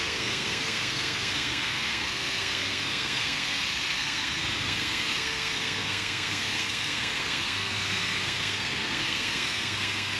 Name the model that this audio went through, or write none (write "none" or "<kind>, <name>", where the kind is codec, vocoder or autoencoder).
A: codec, SNAC